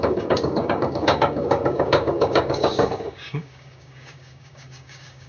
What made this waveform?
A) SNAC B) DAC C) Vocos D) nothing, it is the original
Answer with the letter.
B